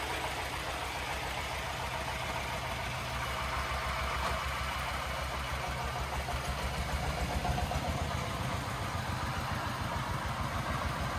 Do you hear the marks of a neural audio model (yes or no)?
no